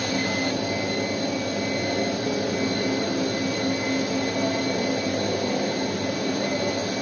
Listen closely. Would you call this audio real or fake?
real